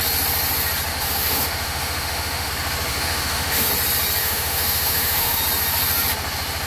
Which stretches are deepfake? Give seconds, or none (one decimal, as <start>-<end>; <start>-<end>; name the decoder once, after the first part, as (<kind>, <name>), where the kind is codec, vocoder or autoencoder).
0.9-2.5 (autoencoder, DAC-VAE); 2.9-3.7; 4.2-5.4